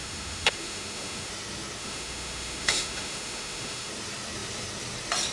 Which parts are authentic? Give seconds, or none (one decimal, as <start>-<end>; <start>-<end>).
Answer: 1.3-1.8; 3.9-5.3